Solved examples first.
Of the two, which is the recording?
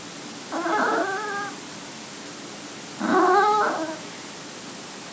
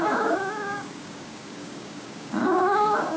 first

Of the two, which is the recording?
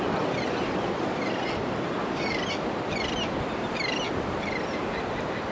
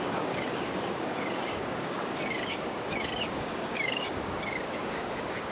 first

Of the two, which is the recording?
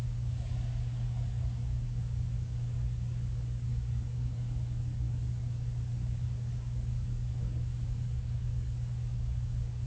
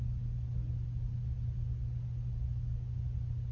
second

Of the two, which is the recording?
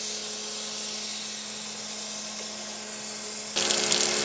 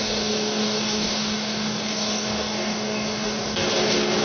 first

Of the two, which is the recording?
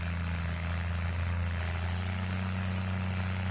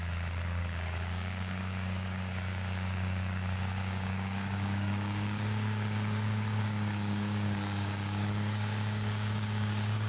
first